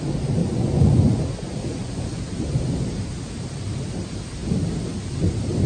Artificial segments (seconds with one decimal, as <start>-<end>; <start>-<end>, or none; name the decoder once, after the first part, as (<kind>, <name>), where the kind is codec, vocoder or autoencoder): 0.4-2.2 (vocoder, Vocos)